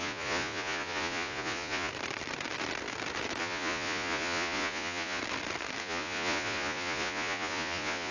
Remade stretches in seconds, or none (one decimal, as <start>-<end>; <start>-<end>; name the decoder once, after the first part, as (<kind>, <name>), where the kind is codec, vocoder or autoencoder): 0.0-1.9 (vocoder, Vocos); 3.4-5.2; 5.8-8.1